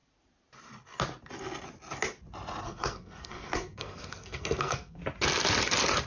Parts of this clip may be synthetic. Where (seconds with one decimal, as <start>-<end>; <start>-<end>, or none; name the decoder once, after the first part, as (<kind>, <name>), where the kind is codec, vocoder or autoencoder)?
2.6-5.0 (codec, SNAC)

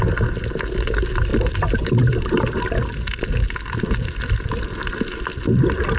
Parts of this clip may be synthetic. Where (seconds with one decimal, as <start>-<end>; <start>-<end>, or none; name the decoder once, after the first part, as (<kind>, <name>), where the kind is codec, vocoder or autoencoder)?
1.3-2.6 (vocoder, BigVGAN v2)

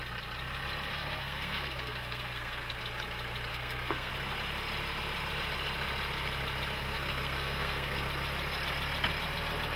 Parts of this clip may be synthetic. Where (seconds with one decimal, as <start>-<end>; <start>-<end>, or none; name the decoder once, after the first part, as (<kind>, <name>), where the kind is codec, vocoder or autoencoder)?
0.9-2.8 (codec, SNAC); 3.5-4.1; 6.9-8.0

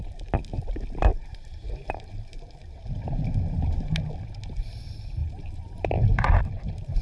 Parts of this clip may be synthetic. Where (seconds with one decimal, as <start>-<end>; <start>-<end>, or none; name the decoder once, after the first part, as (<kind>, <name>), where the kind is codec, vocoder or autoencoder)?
1.1-4.1 (vocoder, BigVGAN v2); 5.2-7.0

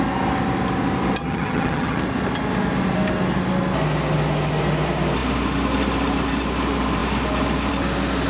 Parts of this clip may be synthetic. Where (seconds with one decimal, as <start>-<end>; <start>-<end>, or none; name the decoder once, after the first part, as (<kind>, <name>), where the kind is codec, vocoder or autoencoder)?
1.2-2.0 (vocoder, HiFi-GAN)

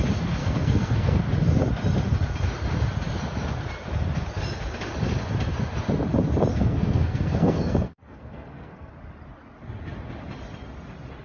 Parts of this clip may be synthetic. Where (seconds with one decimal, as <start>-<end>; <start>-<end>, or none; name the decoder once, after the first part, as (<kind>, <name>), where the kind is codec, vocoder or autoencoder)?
0.4-1.2 (codec, SNAC); 6.5-8.9